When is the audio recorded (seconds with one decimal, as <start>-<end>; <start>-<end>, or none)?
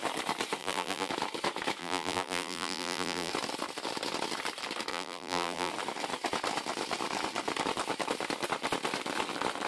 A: 0.0-0.6; 1.1-1.8; 3.3-4.9; 5.7-9.7